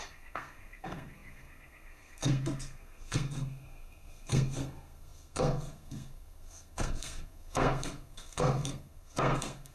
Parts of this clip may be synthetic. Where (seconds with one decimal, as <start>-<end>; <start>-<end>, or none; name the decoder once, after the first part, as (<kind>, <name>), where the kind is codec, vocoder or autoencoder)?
0.0-9.7 (codec, SNAC)